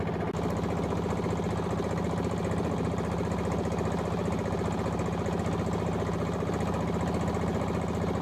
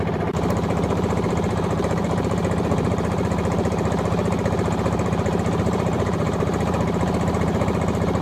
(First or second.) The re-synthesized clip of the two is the second